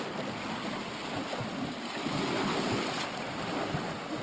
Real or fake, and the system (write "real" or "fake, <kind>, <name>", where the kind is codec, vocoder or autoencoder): real